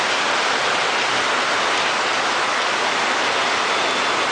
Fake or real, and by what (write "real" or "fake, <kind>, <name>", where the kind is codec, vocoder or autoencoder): real